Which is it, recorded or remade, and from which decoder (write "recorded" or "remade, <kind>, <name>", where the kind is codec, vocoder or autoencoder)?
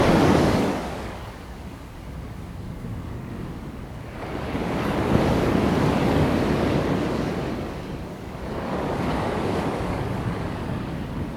remade, codec, DAC